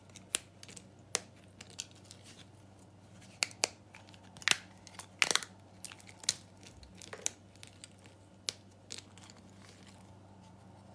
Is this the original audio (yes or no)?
yes